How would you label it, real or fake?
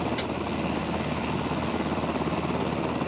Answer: real